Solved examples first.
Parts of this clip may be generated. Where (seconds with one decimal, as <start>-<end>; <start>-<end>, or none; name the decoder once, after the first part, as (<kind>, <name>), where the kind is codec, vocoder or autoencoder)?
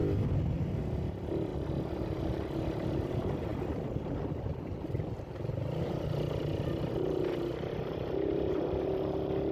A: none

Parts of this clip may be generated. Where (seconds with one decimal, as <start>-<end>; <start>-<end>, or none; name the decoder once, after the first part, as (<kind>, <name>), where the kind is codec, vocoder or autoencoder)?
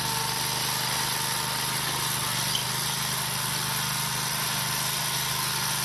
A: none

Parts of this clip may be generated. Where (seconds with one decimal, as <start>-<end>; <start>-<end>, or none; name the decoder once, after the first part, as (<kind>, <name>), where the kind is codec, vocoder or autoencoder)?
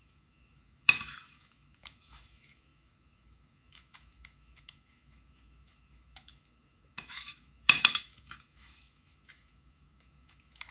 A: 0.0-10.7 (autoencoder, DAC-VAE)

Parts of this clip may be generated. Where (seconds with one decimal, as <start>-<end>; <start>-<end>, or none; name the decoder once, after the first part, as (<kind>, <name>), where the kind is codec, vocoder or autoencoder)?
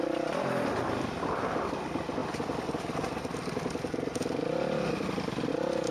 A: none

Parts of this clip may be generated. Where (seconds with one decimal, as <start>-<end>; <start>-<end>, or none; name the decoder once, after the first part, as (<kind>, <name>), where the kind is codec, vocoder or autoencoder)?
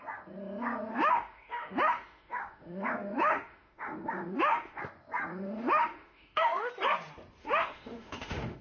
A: 0.9-4.8 (autoencoder, DAC-VAE); 5.3-6.7; 7.4-8.6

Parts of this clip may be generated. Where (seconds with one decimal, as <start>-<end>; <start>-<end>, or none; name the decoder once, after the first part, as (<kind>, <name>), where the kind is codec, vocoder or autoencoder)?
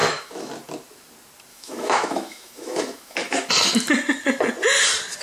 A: 0.0-0.5 (autoencoder, DAC-VAE); 1.5-3.5